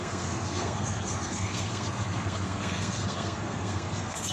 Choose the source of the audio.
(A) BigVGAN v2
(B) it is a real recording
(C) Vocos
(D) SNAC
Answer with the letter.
D